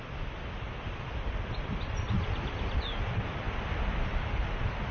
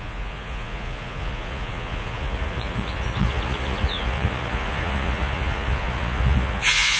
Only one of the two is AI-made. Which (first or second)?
second